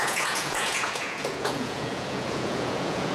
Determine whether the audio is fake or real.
fake